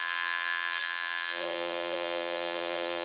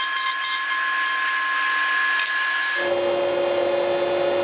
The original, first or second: second